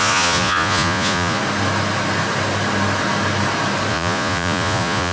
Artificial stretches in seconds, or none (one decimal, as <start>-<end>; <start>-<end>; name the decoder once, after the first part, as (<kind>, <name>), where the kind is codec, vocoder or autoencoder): 0.0-1.4 (vocoder, Vocos); 3.9-5.1